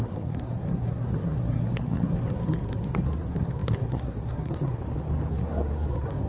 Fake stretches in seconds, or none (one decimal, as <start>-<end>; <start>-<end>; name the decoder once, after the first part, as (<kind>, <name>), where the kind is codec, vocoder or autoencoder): 0.0-4.8 (codec, SNAC); 5.3-6.3